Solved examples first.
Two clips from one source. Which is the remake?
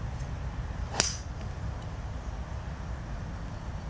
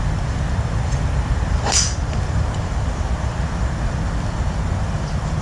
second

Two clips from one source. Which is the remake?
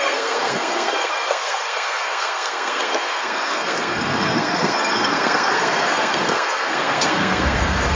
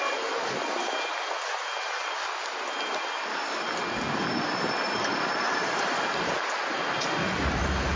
first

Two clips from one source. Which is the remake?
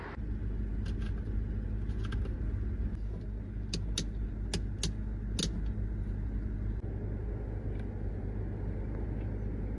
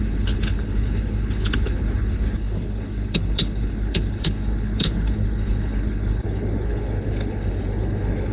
second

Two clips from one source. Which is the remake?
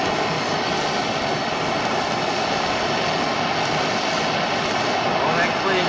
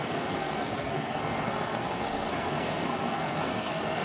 second